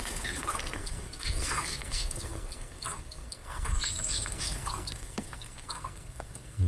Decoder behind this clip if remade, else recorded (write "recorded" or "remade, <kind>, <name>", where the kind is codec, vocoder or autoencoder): remade, codec, SNAC